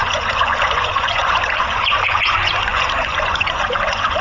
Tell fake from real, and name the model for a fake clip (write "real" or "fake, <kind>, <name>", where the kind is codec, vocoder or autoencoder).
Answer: fake, vocoder, Vocos